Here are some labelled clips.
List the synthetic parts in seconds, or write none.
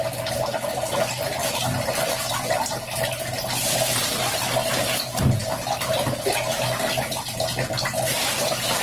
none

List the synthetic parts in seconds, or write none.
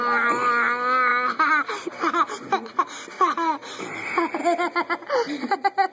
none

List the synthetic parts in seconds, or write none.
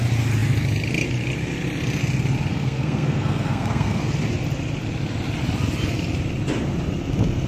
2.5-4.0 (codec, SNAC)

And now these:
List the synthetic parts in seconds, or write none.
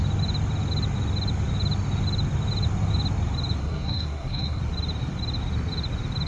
3.6-4.6 (codec, SNAC)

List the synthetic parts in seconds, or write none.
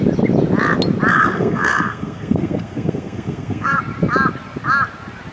1.1-3.8 (codec, SNAC)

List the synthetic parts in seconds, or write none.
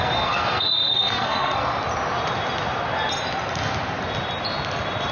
0.0-1.7 (codec, SNAC)